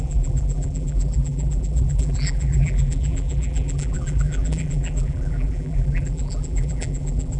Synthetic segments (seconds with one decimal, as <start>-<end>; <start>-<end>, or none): 0.0-7.4